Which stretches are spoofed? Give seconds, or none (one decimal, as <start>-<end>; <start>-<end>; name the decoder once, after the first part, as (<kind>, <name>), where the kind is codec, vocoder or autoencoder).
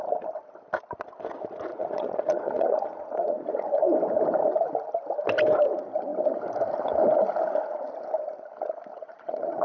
1.7-3.8 (vocoder, Vocos); 8.9-9.6